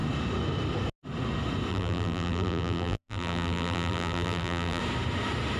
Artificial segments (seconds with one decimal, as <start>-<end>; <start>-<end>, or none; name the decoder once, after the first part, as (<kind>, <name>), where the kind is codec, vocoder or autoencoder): 1.7-4.8 (vocoder, BigVGAN v2)